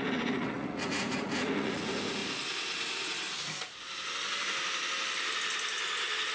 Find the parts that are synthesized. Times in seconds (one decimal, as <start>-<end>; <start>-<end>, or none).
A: 0.0-2.2